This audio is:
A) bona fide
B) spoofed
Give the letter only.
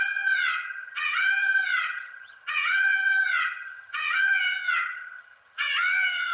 B